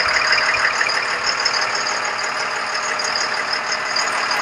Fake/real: real